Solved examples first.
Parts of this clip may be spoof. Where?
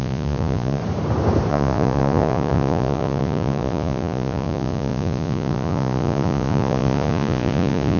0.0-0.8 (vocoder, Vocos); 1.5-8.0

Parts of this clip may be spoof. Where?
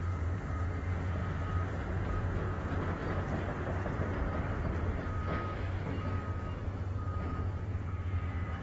0.0-1.2 (vocoder, Vocos); 1.7-3.0; 7.0-8.6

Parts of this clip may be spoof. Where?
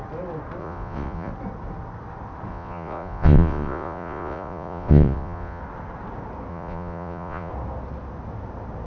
0.6-1.3 (vocoder, Vocos); 2.5-5.6; 6.5-7.5